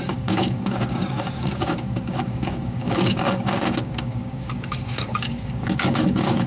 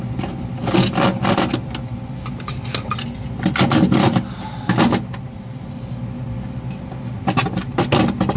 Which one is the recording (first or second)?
second